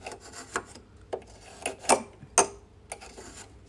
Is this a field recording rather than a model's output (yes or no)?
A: yes